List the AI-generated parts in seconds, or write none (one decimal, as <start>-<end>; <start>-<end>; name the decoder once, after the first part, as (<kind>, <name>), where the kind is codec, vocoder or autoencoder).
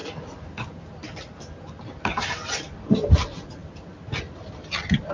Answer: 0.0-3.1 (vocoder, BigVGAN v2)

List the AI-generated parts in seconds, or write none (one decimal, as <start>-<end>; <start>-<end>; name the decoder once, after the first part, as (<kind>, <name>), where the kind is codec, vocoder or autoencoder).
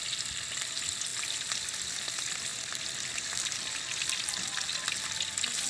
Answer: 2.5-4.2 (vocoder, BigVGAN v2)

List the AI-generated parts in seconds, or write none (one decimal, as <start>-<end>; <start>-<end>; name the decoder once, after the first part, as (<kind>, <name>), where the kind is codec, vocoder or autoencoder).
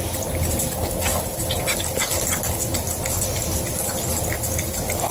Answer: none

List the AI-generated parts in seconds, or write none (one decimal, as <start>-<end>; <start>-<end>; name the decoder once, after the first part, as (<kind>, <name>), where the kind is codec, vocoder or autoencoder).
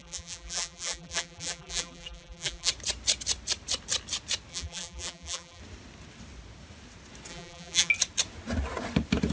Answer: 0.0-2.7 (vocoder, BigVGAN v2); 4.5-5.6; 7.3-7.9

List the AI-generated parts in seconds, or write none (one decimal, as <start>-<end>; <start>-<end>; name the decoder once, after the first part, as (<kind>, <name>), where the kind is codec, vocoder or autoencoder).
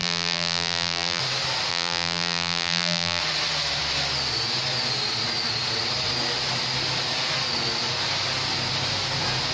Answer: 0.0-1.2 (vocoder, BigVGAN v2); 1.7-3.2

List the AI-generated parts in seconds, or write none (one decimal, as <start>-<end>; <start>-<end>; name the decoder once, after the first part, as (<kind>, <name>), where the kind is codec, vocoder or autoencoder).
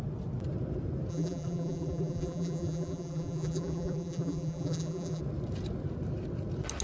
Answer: 1.1-5.2 (vocoder, BigVGAN v2)